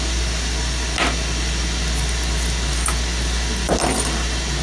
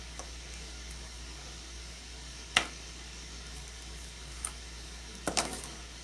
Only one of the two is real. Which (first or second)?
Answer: first